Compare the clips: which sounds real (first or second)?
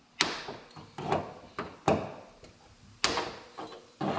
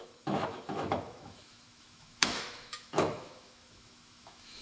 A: first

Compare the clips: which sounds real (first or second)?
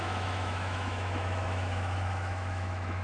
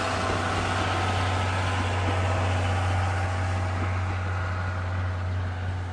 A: second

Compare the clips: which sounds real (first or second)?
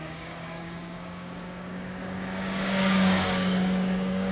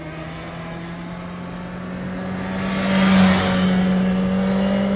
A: second